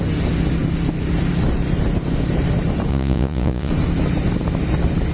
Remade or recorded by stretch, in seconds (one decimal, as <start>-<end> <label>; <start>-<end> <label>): 0.0-2.9 recorded; 2.9-3.7 remade; 3.7-5.1 recorded